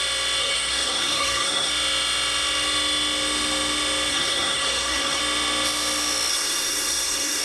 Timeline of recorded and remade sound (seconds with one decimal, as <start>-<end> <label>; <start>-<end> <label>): 0.0-0.4 recorded; 0.4-1.7 remade; 1.7-4.1 recorded; 4.1-5.2 remade; 5.2-6.3 recorded; 6.3-7.4 remade